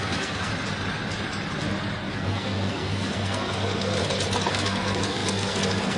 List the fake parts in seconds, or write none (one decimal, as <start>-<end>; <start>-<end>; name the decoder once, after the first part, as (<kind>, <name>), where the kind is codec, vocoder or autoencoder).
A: 0.0-0.5 (codec, SNAC); 2.1-4.0; 4.5-6.0